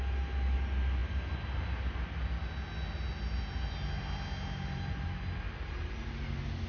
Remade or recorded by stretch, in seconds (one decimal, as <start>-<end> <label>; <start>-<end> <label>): 0.0-6.7 recorded